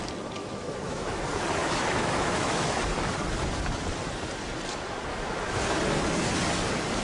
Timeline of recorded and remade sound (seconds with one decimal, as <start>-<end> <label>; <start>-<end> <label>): 0.0-0.4 recorded; 0.4-1.2 remade; 1.2-1.6 recorded; 1.6-2.8 remade; 2.8-5.1 recorded; 5.1-5.6 remade; 5.6-7.0 recorded